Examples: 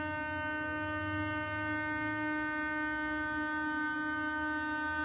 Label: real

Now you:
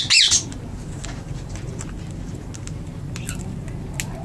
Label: real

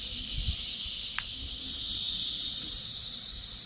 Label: real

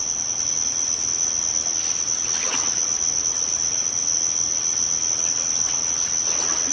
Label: real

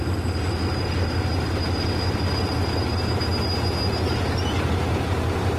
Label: real